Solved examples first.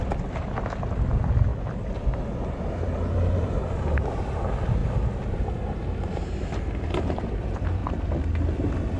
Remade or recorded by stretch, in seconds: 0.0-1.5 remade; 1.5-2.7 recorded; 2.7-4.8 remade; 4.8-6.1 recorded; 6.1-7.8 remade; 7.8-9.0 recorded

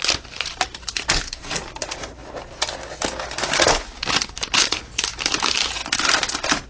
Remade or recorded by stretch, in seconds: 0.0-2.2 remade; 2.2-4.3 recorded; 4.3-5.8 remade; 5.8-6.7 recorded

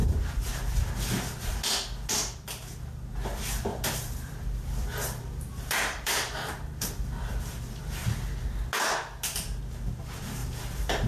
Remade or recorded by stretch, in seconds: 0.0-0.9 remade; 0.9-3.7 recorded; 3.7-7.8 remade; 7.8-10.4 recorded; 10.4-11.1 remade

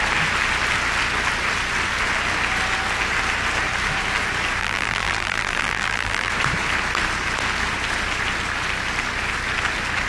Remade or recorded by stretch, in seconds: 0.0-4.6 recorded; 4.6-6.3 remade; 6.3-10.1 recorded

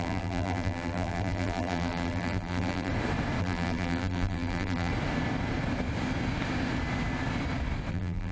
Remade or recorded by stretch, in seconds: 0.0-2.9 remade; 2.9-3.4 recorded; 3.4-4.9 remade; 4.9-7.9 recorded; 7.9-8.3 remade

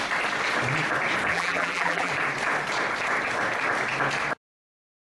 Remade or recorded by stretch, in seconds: 0.0-1.3 recorded; 1.3-2.1 remade; 2.1-5.0 recorded